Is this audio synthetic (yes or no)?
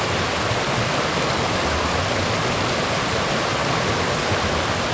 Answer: no